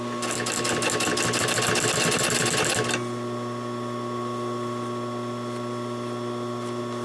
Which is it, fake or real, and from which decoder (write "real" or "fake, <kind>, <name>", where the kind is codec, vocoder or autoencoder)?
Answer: real